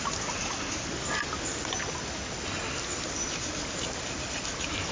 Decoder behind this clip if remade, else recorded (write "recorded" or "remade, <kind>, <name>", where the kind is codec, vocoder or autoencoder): recorded